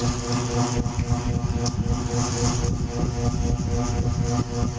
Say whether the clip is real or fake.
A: real